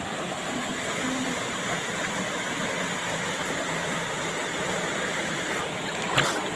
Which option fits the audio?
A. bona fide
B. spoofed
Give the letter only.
A